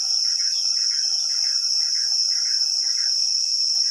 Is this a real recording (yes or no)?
yes